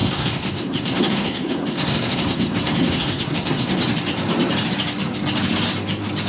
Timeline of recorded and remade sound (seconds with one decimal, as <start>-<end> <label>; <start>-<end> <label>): 0.0-3.8 remade; 3.8-6.3 recorded